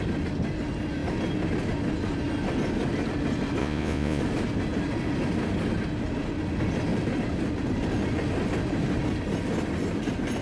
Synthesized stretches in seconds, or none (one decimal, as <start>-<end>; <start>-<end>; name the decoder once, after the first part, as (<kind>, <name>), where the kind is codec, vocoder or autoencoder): 3.6-4.2 (vocoder, Vocos)